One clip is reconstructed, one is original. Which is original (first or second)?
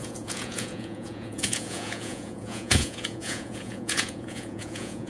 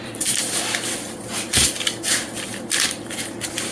second